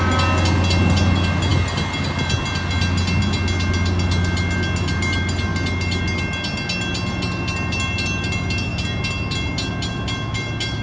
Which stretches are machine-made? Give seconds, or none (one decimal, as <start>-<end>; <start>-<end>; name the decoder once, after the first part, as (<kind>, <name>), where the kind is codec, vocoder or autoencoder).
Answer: none